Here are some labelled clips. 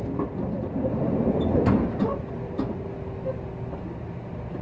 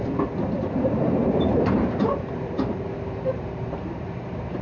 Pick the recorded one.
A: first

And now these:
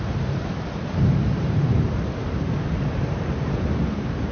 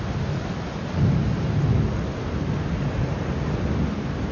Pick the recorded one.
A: second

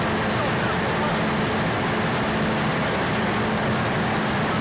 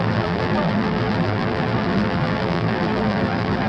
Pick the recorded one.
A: first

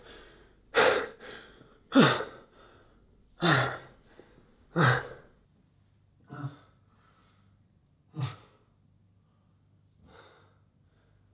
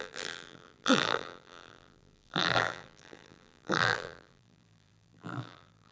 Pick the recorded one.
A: first